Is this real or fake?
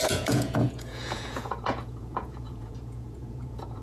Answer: fake